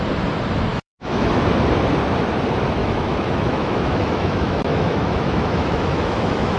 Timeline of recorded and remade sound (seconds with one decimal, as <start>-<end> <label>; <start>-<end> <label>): 0.0-0.7 recorded; 0.7-1.3 remade; 1.3-2.8 recorded; 2.8-6.6 remade